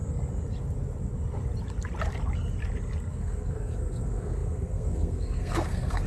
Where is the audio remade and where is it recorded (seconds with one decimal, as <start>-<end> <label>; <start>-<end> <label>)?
0.0-3.1 recorded; 3.1-6.1 remade